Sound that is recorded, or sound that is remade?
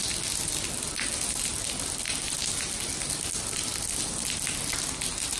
recorded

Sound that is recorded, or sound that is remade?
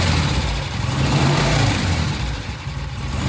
remade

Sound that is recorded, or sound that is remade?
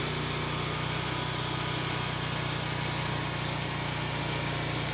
recorded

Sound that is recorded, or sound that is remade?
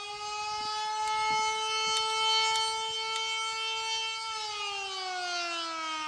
recorded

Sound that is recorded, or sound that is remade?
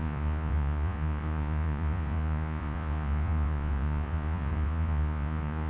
remade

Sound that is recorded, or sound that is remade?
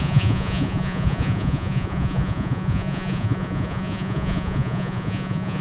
remade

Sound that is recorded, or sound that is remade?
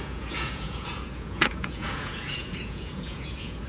remade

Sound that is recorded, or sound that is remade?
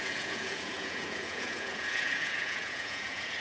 remade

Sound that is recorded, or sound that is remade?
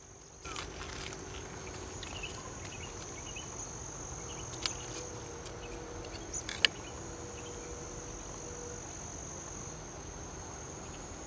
recorded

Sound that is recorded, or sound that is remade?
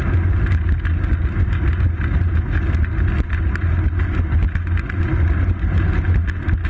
recorded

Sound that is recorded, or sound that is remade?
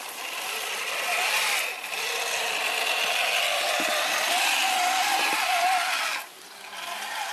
recorded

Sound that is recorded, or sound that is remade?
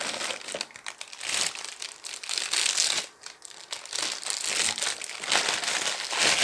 recorded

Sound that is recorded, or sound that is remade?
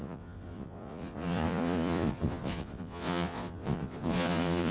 remade